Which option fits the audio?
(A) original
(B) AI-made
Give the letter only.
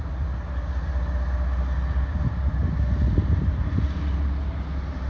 A